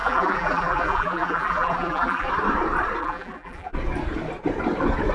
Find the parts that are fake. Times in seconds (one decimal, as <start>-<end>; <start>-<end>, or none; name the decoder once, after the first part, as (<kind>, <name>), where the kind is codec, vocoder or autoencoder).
0.0-2.3 (vocoder, BigVGAN v2); 3.0-3.7